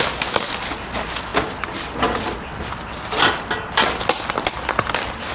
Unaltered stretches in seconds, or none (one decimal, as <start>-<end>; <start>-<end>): 0.0-5.3